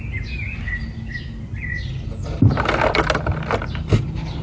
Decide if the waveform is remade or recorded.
recorded